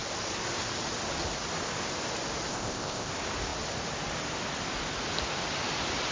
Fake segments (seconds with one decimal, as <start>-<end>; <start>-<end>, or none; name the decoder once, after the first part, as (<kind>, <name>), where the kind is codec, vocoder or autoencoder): 2.5-3.1 (codec, ZipCodec)